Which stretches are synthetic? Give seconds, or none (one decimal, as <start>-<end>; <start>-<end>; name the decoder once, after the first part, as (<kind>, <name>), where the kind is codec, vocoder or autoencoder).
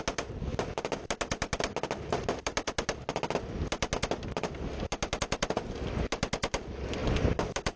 none